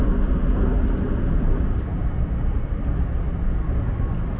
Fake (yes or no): no